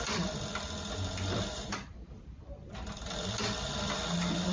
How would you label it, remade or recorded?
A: remade